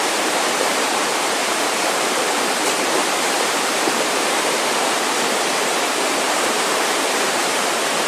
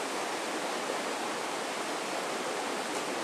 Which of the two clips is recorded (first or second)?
second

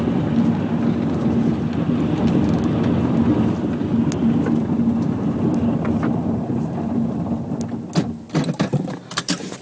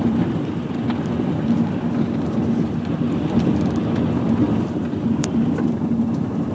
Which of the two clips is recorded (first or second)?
first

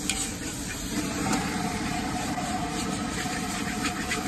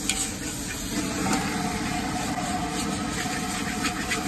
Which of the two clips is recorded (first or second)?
second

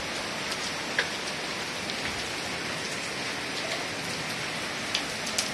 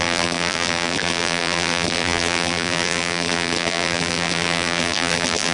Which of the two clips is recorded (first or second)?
first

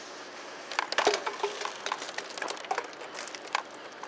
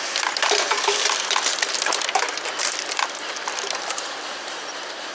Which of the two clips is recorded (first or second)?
first